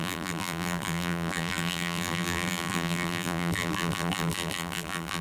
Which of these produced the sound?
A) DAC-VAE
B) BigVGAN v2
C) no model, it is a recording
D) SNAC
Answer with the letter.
B